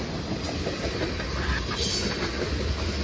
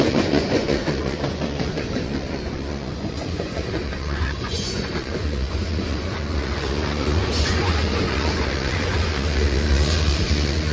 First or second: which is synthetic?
second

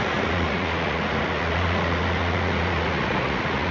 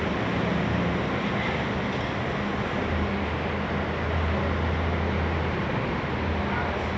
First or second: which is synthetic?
first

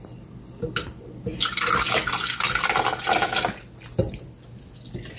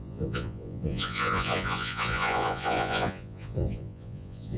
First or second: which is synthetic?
second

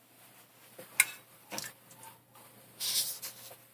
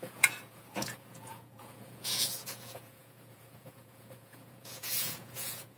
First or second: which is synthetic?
second